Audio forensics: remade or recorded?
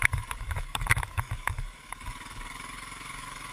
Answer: remade